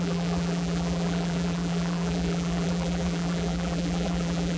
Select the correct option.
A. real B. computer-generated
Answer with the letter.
B